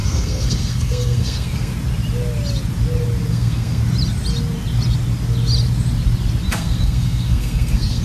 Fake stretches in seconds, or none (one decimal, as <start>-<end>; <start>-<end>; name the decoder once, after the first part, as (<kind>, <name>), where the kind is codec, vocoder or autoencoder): 0.0-1.7 (codec, SNAC); 3.3-3.8; 6.5-8.0